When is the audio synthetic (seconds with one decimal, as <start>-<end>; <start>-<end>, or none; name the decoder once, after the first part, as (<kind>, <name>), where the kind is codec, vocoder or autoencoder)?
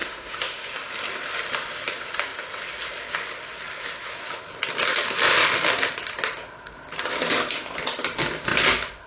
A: 0.0-0.7 (autoencoder, DAC-VAE)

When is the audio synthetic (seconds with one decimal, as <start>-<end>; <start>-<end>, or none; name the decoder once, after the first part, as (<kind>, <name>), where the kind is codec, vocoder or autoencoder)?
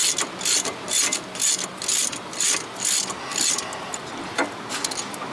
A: none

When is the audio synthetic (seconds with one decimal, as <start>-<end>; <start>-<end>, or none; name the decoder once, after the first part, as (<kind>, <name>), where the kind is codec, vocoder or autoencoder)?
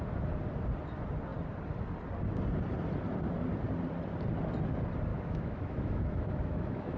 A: 5.1-7.0 (autoencoder, DAC-VAE)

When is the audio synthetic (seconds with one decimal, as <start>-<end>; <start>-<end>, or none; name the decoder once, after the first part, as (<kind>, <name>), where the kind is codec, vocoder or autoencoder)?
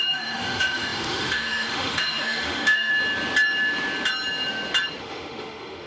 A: 0.0-2.9 (autoencoder, DAC-VAE); 5.0-5.9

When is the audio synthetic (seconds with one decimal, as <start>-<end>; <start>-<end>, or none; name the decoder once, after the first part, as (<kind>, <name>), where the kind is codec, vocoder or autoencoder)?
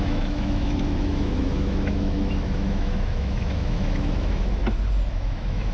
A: 0.0-4.6 (autoencoder, DAC-VAE); 5.1-5.7